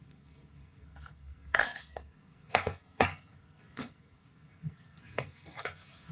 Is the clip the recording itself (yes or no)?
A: no